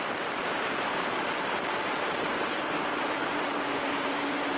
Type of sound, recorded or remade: remade